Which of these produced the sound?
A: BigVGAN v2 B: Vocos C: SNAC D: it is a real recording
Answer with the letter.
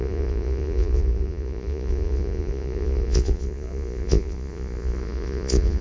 B